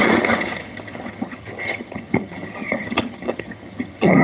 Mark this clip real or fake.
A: fake